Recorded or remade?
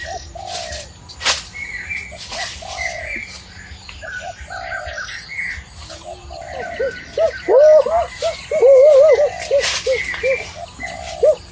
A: recorded